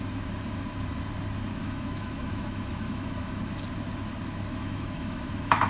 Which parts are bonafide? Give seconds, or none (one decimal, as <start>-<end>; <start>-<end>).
0.0-1.6; 3.4-4.6